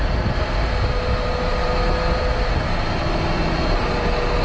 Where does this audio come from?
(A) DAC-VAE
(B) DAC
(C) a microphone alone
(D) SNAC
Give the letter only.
C